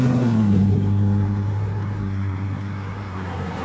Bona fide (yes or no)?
no